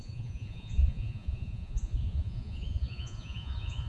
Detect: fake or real fake